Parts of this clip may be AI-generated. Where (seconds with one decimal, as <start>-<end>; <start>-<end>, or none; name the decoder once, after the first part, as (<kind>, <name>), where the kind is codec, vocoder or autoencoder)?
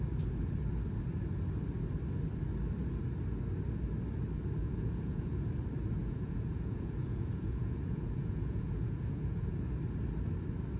4.6-5.5 (vocoder, Vocos); 6.0-9.8